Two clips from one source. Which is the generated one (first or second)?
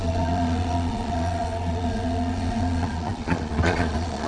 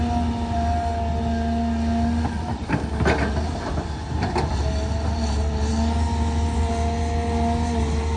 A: first